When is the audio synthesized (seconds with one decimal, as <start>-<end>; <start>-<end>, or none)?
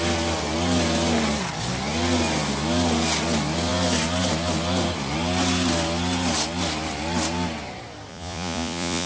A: 8.1-9.1